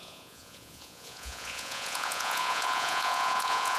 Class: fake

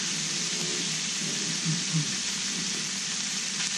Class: real